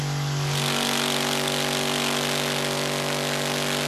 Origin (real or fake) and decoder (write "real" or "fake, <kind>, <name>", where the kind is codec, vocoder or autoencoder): real